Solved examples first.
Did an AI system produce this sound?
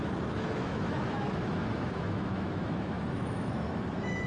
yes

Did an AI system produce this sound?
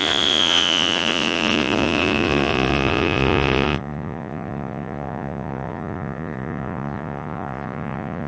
yes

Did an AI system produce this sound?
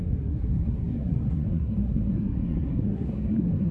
yes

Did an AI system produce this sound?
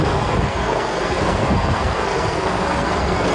yes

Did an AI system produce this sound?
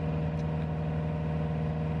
no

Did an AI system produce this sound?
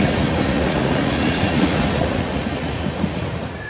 yes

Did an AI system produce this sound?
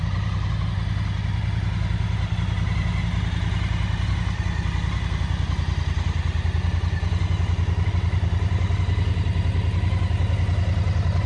no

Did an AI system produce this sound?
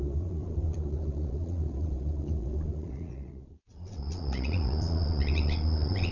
yes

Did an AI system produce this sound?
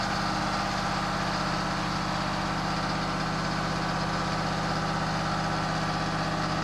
no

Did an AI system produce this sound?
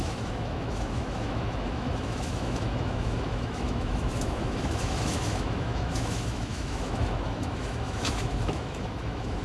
yes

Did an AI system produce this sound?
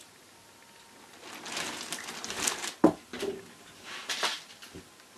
no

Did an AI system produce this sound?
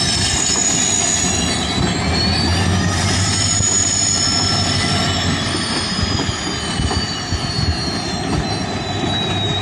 no